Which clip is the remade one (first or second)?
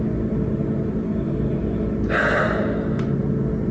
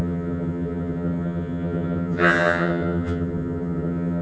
second